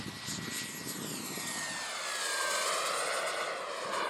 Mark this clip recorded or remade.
recorded